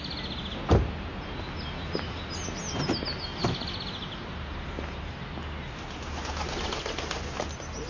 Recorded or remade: recorded